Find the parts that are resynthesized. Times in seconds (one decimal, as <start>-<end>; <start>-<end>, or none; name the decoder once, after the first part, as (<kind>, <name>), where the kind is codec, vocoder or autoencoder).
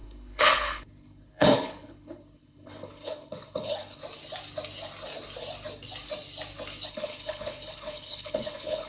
0.0-4.0 (codec, HILCodec); 6.9-8.9